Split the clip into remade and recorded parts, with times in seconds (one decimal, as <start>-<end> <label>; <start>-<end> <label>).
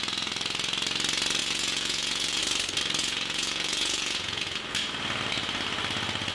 0.0-1.4 recorded; 1.4-2.4 remade; 2.4-3.0 recorded; 3.0-4.6 remade; 4.6-6.3 recorded